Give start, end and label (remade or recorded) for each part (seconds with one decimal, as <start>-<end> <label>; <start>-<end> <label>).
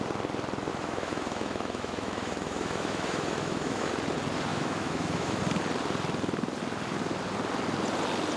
0.0-0.7 recorded; 0.7-3.9 remade; 3.9-4.5 recorded; 4.5-5.4 remade; 5.4-8.4 recorded